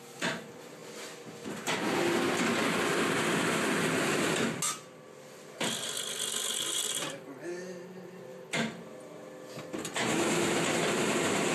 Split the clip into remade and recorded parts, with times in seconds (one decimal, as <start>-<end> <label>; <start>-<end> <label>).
0.0-11.5 recorded